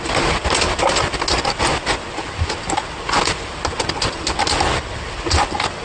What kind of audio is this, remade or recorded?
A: recorded